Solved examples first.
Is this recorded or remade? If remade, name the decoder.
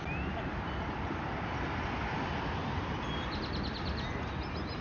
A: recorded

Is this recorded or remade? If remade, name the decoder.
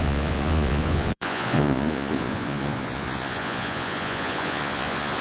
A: remade, vocoder, Vocos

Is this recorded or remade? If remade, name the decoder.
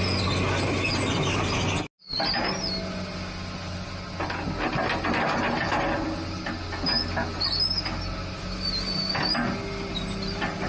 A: recorded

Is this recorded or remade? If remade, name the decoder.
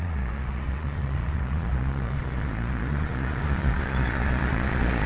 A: remade, vocoder, Vocos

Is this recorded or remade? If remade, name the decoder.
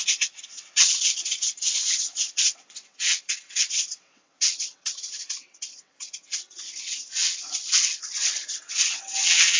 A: remade, vocoder, WaveNeXt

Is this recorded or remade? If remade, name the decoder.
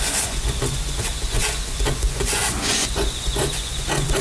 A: remade, vocoder, Vocos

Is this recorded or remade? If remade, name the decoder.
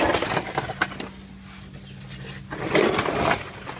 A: recorded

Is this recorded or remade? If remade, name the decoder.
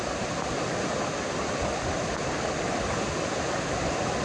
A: recorded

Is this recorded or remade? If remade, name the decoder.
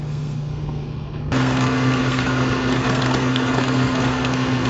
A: remade, codec, SNAC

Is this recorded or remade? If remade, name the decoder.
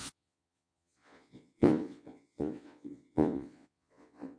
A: remade, vocoder, Vocos